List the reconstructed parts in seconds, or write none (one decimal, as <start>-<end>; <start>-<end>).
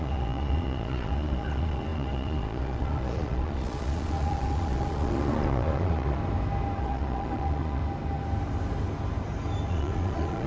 0.0-6.2; 6.8-7.8; 9.7-10.5